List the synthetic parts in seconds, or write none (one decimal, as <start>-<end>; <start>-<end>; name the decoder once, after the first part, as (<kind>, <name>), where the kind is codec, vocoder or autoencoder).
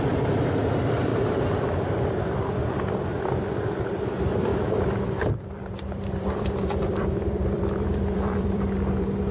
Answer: 0.0-1.1 (vocoder, BigVGAN v2); 3.8-9.3